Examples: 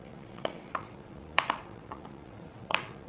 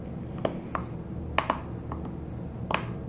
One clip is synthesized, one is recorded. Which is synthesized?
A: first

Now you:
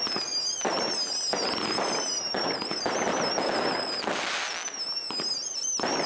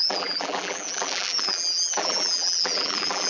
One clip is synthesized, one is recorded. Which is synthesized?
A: second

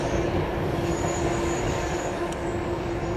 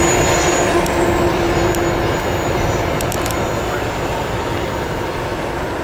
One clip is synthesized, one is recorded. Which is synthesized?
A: first